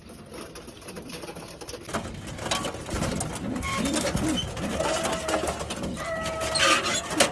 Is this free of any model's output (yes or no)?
yes